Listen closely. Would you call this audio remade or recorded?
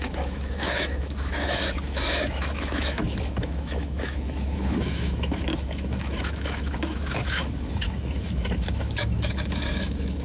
remade